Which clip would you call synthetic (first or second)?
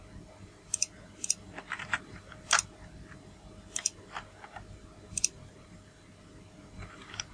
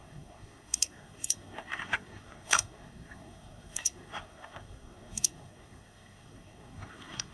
second